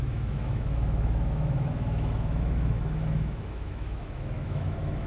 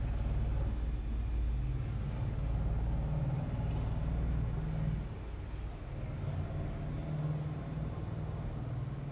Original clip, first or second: second